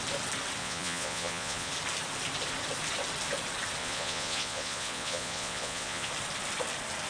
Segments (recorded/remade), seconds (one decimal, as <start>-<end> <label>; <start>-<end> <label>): 0.0-0.6 recorded; 0.6-1.7 remade; 1.7-3.8 recorded; 3.8-6.1 remade; 6.1-7.1 recorded